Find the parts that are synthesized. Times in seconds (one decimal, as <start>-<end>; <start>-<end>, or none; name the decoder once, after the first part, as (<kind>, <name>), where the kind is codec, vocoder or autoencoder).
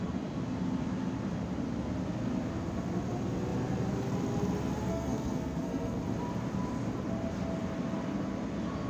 4.9-6.0 (codec, SNAC)